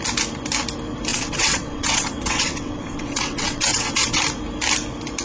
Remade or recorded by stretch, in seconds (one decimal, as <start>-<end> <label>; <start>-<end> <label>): 0.0-1.1 recorded; 1.1-4.2 remade; 4.2-5.2 recorded